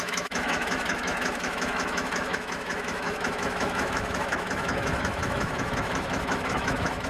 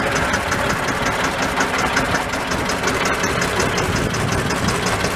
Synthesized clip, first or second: first